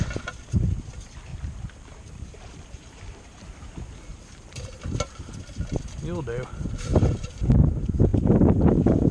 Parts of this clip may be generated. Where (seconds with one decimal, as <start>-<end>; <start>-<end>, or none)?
1.3-3.4; 4.1-5.3; 8.1-9.1